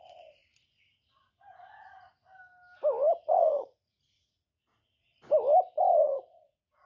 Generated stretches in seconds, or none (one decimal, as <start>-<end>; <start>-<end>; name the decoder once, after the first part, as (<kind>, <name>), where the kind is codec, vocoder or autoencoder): 0.0-0.4 (vocoder, Vocos); 3.2-4.7; 5.9-6.9